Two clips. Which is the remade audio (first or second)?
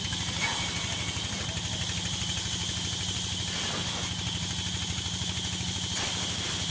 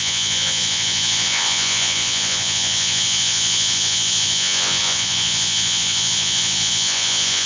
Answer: second